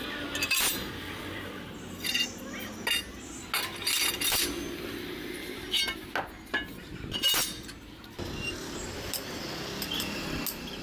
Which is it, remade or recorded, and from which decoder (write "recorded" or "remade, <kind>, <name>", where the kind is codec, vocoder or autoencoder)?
recorded